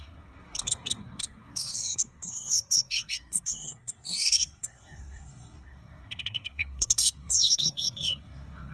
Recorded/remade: remade